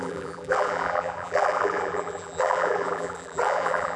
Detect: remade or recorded remade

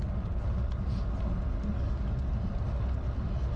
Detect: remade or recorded recorded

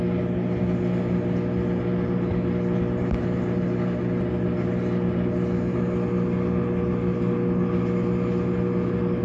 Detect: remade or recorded recorded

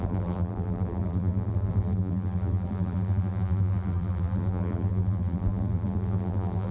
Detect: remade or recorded remade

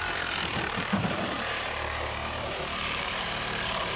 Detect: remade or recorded remade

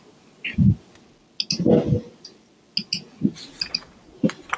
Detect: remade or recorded recorded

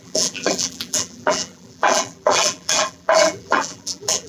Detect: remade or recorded remade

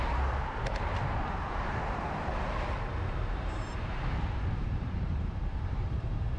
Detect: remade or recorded remade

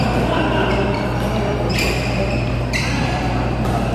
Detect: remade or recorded remade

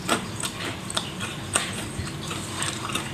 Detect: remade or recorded remade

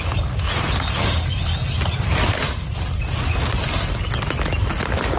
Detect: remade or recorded recorded